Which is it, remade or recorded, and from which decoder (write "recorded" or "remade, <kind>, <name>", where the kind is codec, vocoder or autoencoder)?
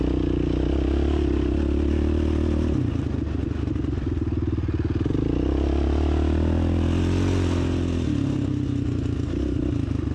recorded